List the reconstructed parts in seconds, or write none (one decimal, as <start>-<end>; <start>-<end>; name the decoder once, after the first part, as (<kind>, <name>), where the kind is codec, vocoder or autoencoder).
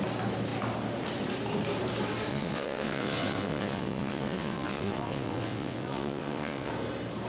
2.3-6.7 (vocoder, WaveNeXt)